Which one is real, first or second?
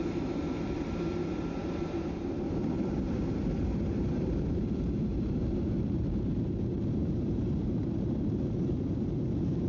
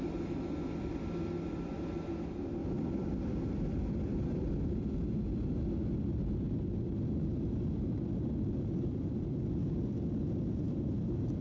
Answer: second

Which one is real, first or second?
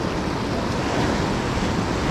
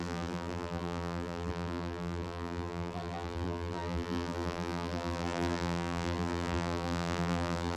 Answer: first